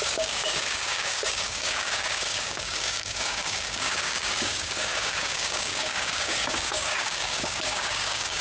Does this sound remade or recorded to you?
remade